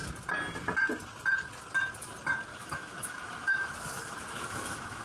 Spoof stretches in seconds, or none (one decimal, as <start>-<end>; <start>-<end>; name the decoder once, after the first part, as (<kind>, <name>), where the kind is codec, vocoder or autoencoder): 2.5-5.0 (autoencoder, DAC-VAE)